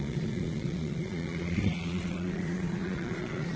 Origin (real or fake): fake